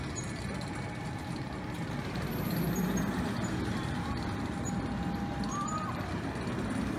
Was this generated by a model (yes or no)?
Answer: no